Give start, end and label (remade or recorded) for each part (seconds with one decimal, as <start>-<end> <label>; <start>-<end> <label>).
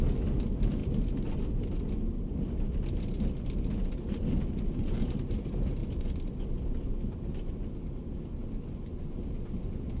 0.0-10.0 recorded